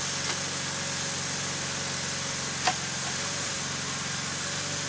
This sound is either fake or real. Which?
real